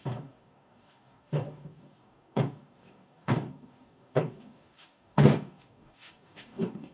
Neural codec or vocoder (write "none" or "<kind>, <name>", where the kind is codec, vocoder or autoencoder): codec, DAC